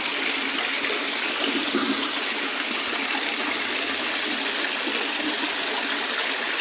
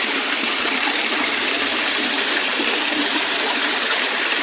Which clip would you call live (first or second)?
first